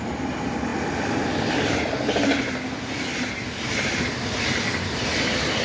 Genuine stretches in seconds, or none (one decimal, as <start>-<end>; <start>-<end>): 0.0-5.6

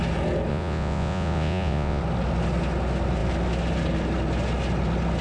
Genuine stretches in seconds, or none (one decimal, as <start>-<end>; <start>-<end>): 0.0-0.5; 2.0-5.2